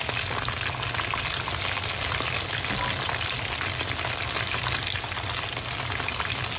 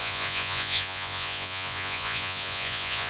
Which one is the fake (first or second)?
second